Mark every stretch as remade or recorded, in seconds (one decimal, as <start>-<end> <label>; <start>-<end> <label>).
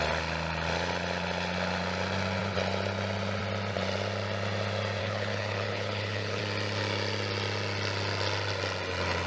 0.0-5.0 recorded; 5.0-6.4 remade; 6.4-9.3 recorded